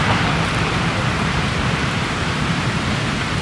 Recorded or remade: remade